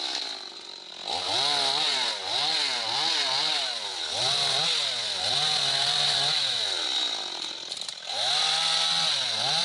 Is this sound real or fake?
real